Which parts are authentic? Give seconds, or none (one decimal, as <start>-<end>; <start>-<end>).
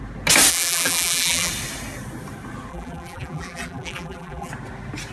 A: 0.0-0.5; 1.5-2.7; 4.5-5.1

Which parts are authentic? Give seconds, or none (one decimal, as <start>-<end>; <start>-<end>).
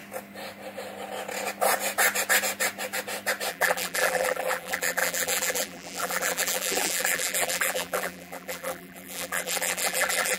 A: 0.0-3.5